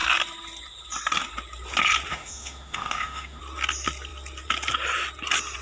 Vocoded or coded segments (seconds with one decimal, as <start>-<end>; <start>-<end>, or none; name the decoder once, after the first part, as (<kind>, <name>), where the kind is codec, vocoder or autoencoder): 2.1-3.4 (autoencoder, DAC-VAE)